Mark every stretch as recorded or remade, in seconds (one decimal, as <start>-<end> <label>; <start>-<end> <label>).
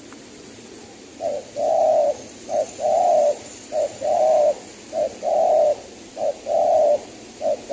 0.0-7.7 recorded